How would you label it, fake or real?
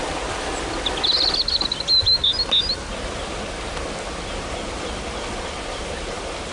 real